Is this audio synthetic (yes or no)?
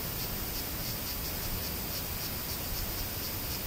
no